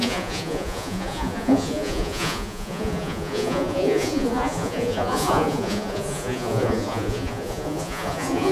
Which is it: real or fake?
fake